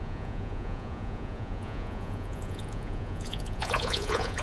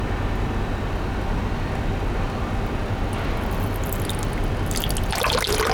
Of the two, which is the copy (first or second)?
first